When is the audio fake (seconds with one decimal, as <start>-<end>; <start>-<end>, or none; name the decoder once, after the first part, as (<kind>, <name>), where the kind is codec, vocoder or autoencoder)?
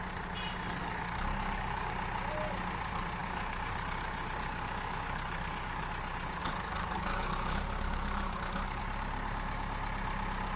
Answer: 0.8-1.9 (codec, DAC); 3.2-5.9; 6.4-8.8